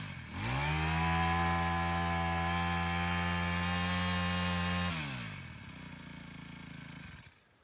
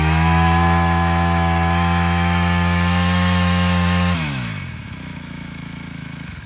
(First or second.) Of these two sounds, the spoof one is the second